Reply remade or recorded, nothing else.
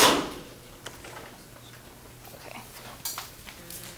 recorded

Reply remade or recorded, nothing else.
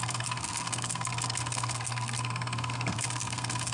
remade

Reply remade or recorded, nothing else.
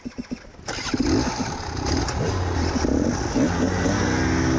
recorded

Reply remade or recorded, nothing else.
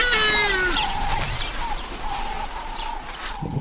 recorded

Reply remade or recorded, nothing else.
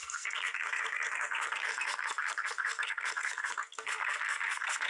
remade